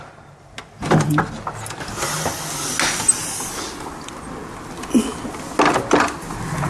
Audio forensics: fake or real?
real